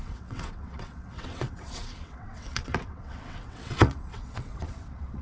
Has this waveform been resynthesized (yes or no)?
yes